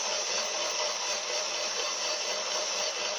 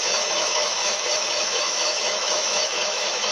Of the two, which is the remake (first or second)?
second